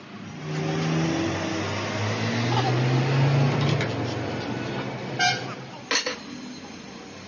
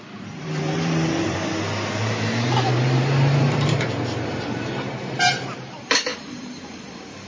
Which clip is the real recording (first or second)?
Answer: first